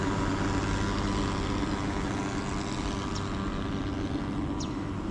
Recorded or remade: recorded